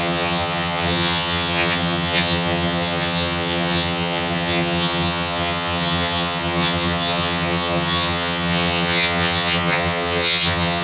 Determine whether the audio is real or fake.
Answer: fake